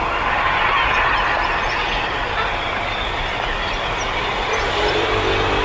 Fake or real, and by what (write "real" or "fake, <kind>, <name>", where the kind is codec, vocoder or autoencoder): real